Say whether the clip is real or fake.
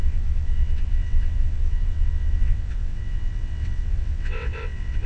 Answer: fake